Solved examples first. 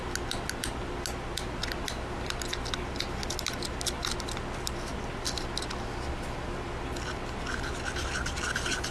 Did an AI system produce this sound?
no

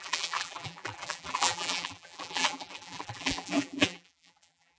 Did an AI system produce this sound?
yes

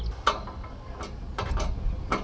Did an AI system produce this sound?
no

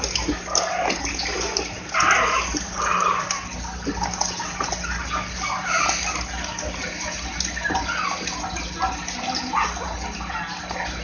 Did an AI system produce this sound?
no